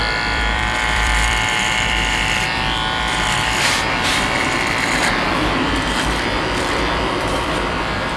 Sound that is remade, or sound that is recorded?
remade